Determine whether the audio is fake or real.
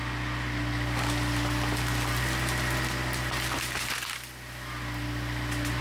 real